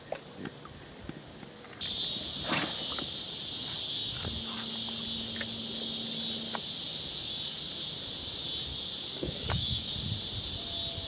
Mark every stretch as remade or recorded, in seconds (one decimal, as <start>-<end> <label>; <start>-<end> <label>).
0.0-9.2 recorded; 9.2-9.9 remade; 9.9-11.1 recorded